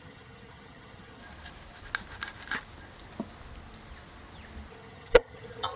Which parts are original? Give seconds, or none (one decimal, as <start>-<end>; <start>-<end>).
1.2-4.7